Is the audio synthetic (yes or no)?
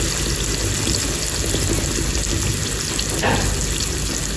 no